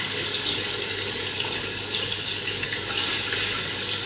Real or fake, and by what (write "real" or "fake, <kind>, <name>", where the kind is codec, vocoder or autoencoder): fake, codec, DAC